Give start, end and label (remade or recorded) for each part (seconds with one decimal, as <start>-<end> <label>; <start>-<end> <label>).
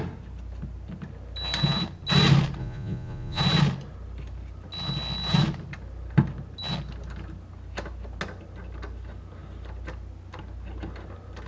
0.0-2.6 recorded; 2.6-3.4 remade; 3.4-11.5 recorded